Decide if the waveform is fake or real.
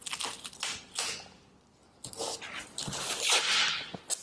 real